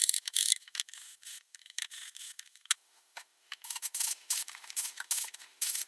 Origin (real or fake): fake